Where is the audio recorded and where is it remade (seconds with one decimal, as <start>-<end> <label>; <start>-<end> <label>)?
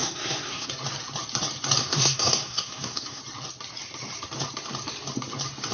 0.0-0.7 remade; 0.7-1.8 recorded; 1.8-3.2 remade; 3.2-5.7 recorded